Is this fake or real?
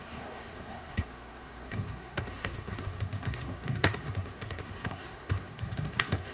fake